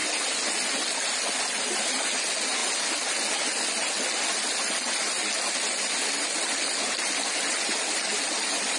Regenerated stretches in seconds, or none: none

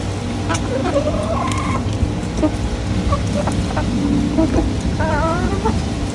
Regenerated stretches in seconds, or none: 0.8-2.1; 4.9-6.1

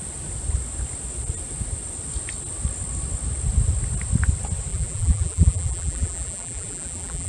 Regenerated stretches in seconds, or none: 4.7-7.3